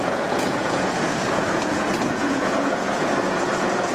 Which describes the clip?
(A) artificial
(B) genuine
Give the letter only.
A